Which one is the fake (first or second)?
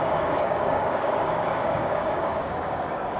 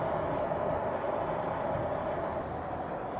first